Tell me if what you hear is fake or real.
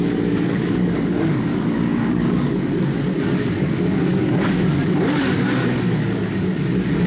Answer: fake